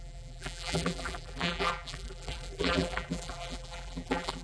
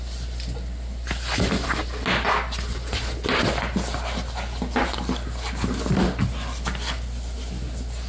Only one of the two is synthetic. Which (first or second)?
first